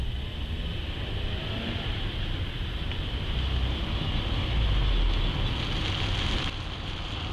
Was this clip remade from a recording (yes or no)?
no